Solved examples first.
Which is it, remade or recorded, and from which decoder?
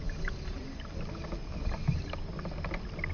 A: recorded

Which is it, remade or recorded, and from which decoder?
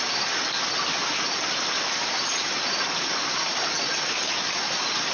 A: recorded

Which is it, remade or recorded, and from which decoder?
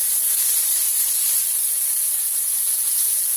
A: recorded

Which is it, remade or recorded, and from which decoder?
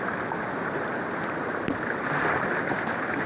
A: recorded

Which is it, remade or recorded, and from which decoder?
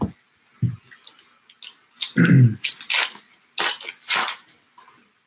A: recorded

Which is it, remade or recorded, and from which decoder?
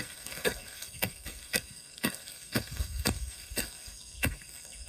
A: remade, codec, SNAC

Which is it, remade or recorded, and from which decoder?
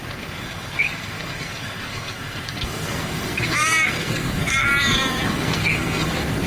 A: remade, codec, SNAC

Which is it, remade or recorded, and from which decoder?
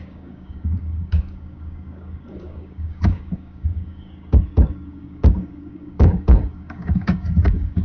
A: remade, codec, DAC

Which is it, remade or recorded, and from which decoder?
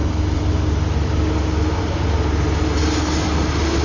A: recorded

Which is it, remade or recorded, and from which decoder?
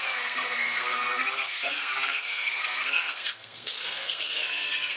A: remade, codec, SNAC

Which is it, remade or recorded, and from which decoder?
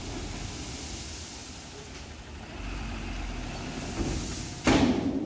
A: recorded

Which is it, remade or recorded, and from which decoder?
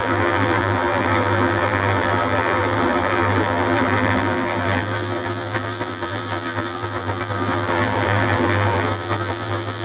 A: remade, vocoder, BigVGAN v2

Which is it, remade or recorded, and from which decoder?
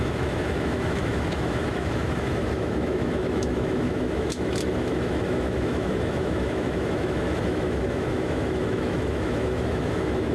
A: remade, autoencoder, DAC-VAE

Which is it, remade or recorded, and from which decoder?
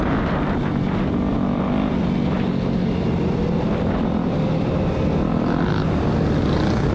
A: recorded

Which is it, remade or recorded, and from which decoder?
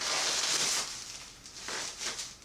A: recorded